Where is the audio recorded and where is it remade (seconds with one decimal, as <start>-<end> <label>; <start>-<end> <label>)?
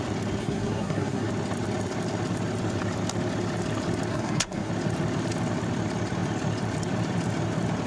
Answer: 0.0-0.4 recorded; 0.4-1.3 remade; 1.3-4.1 recorded; 4.1-4.7 remade; 4.7-7.9 recorded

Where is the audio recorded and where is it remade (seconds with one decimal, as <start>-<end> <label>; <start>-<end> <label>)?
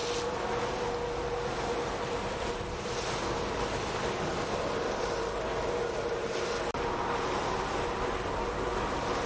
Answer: 0.0-9.3 recorded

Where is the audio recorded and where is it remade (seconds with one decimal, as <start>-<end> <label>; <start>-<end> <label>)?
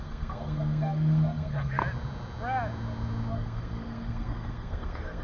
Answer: 0.0-1.8 remade; 1.8-3.3 recorded; 3.3-5.2 remade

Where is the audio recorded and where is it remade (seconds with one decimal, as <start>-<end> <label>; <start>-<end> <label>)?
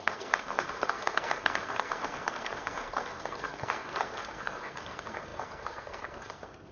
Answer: 0.0-6.7 remade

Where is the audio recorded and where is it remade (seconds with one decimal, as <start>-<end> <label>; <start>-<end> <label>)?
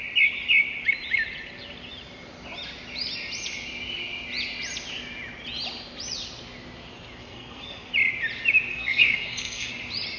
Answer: 0.0-7.2 recorded; 7.2-7.9 remade; 7.9-8.7 recorded; 8.7-9.7 remade; 9.7-10.2 recorded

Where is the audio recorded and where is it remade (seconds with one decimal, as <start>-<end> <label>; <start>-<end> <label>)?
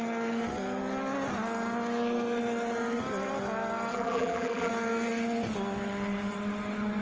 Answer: 0.0-3.9 recorded; 3.9-4.7 remade; 4.7-7.0 recorded